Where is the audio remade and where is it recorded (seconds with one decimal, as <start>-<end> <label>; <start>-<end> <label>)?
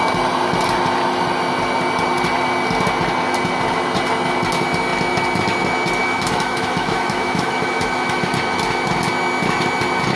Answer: 0.0-6.0 recorded; 6.0-8.3 remade; 8.3-10.2 recorded